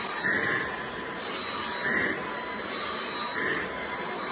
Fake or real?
real